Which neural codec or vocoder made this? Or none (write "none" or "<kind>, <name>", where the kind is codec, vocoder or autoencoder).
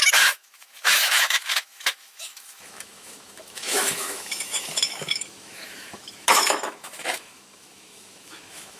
autoencoder, DAC-VAE